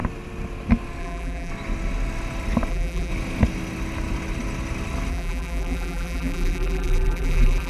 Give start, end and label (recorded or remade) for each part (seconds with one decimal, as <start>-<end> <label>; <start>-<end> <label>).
0.0-1.0 recorded; 1.0-1.5 remade; 1.5-2.7 recorded; 2.7-3.1 remade; 3.1-5.1 recorded; 5.1-7.7 remade